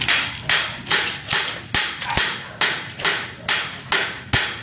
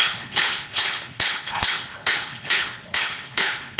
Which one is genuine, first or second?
first